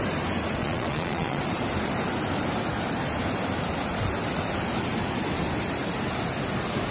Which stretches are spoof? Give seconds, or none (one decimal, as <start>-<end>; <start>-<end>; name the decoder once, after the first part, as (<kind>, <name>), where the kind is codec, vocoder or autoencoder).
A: 0.6-1.4 (vocoder, Vocos)